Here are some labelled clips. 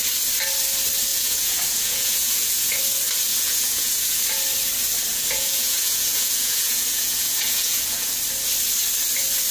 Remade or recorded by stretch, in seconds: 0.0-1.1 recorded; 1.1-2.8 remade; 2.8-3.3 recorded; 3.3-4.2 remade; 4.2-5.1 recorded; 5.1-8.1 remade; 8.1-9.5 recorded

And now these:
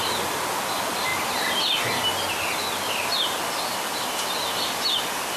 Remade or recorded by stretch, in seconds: 0.0-5.4 recorded

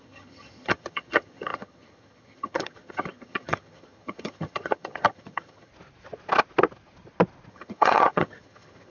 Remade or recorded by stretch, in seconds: 0.0-5.7 remade; 5.7-7.5 recorded; 7.5-8.9 remade

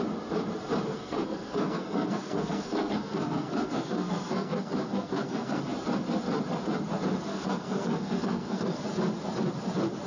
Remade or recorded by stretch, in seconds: 0.0-0.9 recorded; 0.9-5.6 remade; 5.6-7.3 recorded; 7.3-8.8 remade; 8.8-10.1 recorded

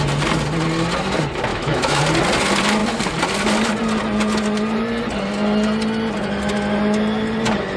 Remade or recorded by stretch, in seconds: 0.0-1.5 recorded; 1.5-2.0 remade; 2.0-7.8 recorded

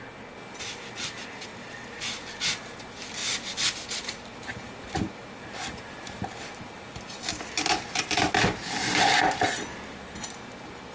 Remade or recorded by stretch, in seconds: 0.0-1.5 recorded; 1.5-2.3 remade; 2.3-3.2 recorded; 3.2-8.3 remade; 8.3-10.9 recorded

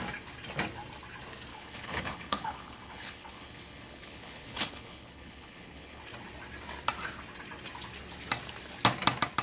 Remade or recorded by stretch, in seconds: 0.0-1.5 recorded; 1.5-6.0 remade; 6.0-9.4 recorded

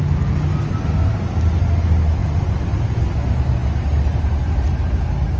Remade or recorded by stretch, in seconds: 0.0-5.4 recorded